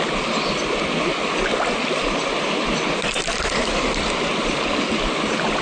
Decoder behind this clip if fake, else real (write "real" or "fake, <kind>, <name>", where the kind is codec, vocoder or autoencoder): real